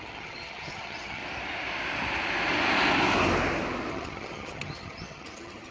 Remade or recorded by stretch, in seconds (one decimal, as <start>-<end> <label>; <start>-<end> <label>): 0.0-1.2 remade; 1.2-3.9 recorded; 3.9-5.7 remade